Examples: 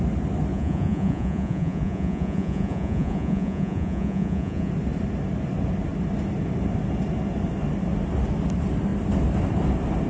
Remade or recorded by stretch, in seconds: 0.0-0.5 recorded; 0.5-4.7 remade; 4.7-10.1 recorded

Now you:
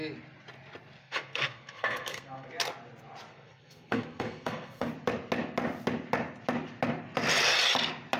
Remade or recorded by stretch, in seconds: 0.0-1.0 recorded; 1.0-2.5 remade; 2.5-3.3 recorded; 3.3-4.9 remade; 4.9-8.2 recorded

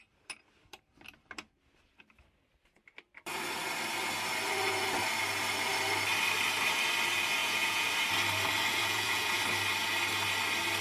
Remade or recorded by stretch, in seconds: 0.0-7.4 recorded; 7.4-7.9 remade; 7.9-8.7 recorded; 8.7-9.4 remade; 9.4-10.8 recorded

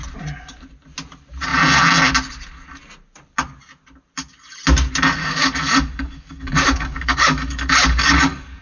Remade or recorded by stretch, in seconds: 0.0-5.2 recorded; 5.2-8.6 remade

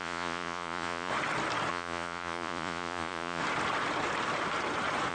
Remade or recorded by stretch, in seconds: 0.0-1.1 remade; 1.1-1.7 recorded; 1.7-3.4 remade; 3.4-5.1 recorded

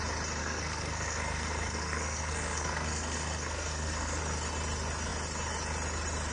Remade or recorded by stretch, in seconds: 0.0-0.4 recorded; 0.4-4.2 remade; 4.2-6.3 recorded

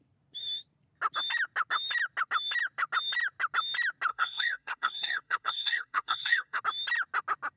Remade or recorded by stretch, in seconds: 0.0-4.1 recorded; 4.1-6.6 remade; 6.6-7.6 recorded